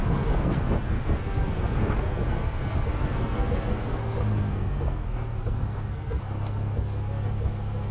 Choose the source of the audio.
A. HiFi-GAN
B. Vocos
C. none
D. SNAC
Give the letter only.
D